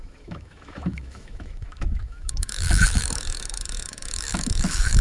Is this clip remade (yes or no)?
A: yes